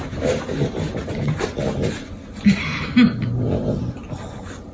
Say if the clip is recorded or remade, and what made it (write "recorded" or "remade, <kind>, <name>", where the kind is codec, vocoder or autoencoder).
recorded